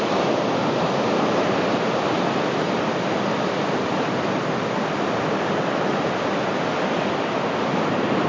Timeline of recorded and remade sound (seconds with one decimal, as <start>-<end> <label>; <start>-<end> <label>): 0.0-0.6 recorded; 0.6-2.2 remade; 2.2-8.3 recorded